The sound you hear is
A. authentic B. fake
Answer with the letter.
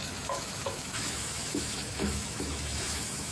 B